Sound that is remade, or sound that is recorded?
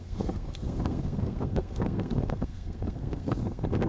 remade